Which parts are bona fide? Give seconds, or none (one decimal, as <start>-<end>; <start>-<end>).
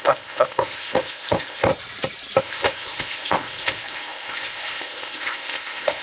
1.7-2.4